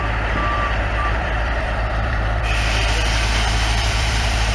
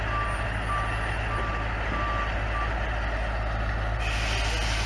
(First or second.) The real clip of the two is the second